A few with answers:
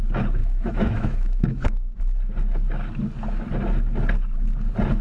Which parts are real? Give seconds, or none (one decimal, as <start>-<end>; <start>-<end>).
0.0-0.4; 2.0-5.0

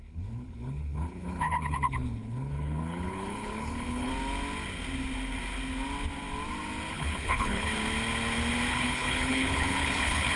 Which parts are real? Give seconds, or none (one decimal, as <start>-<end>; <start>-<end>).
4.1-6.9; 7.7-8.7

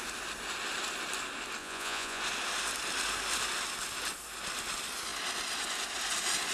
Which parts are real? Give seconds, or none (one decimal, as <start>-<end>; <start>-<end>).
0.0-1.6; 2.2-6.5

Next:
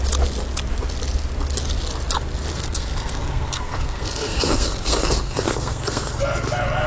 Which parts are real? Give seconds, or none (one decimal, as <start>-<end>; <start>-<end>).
0.0-2.5; 6.2-6.9